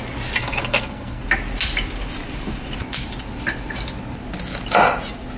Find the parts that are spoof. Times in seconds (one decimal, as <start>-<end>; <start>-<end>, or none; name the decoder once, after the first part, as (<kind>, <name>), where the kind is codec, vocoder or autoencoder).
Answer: 0.4-1.2 (codec, SNAC)